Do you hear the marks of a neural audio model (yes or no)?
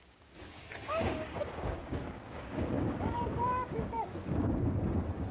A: yes